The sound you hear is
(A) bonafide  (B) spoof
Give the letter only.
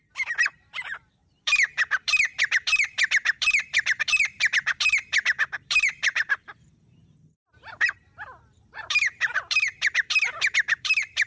B